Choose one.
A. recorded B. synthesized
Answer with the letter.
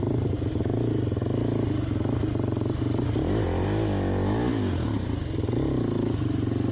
A